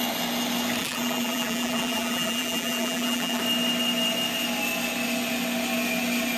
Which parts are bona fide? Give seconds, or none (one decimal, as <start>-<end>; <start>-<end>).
0.0-0.8; 3.4-6.4